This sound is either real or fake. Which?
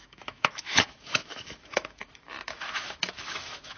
fake